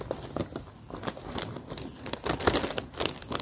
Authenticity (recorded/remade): recorded